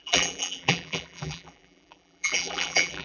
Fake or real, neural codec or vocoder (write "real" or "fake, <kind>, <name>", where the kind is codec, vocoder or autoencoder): fake, vocoder, BigVGAN v2